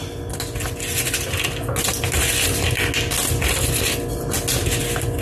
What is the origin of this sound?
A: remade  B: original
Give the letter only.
B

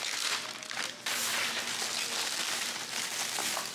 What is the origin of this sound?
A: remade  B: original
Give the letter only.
B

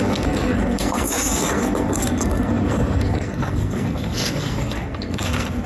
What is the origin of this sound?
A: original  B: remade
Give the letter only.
B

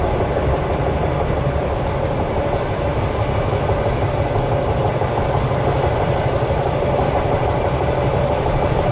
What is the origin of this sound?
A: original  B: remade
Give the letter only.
A